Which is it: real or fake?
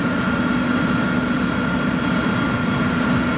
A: real